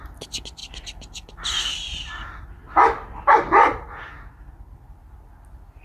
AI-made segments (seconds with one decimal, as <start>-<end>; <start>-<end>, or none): 0.6-4.1